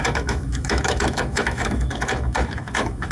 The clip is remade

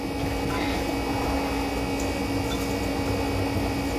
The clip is recorded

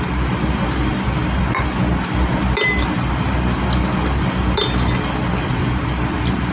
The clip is recorded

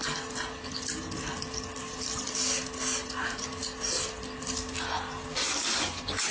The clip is recorded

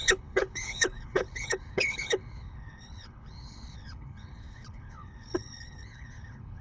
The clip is remade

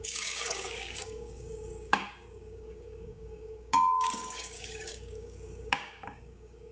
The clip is remade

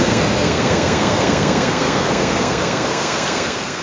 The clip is remade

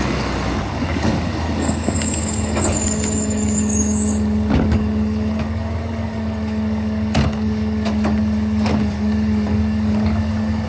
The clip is remade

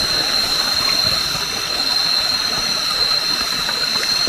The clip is recorded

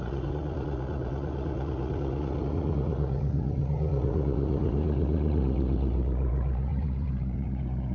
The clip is remade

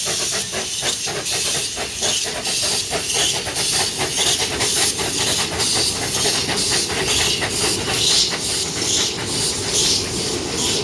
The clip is recorded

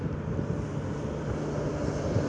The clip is recorded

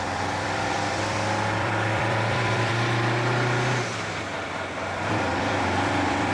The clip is remade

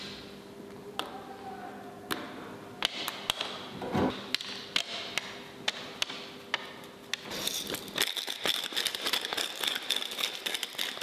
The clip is recorded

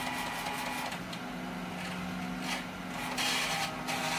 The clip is recorded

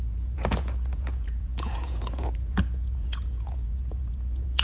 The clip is remade